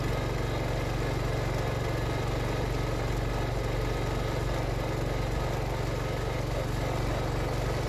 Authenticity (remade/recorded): recorded